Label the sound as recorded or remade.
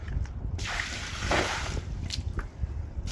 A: recorded